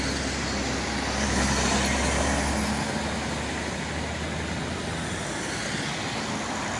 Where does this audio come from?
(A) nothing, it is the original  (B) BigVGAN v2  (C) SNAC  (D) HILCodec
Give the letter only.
A